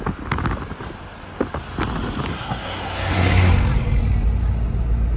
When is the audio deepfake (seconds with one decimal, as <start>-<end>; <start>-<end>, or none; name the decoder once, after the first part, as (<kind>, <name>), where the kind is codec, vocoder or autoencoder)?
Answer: 2.3-3.5 (codec, SNAC)